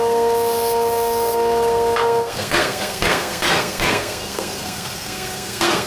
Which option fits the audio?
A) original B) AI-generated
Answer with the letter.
B